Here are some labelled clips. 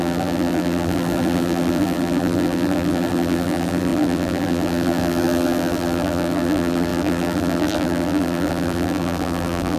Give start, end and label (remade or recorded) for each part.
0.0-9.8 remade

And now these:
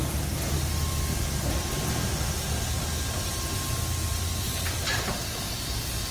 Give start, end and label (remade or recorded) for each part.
0.0-0.9 recorded; 0.9-1.7 remade; 1.7-4.1 recorded; 4.1-6.1 remade

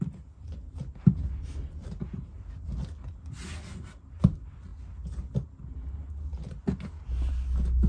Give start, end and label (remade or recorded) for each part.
0.0-7.9 recorded

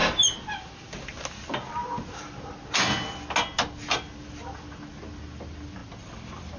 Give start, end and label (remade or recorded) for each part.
0.0-1.8 recorded; 1.8-2.5 remade; 2.5-6.6 recorded

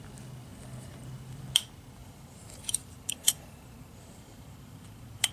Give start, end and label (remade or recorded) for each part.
0.0-2.0 recorded; 2.0-5.3 remade